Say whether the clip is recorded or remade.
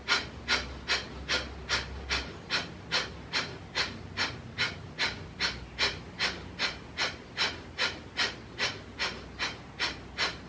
recorded